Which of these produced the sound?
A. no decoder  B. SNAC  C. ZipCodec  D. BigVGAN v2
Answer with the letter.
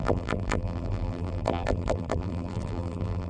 D